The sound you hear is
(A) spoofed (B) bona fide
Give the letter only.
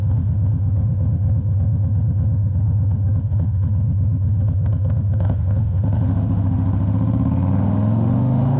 A